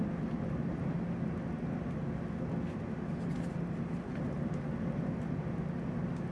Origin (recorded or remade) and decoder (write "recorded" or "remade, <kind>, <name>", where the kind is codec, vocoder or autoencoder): recorded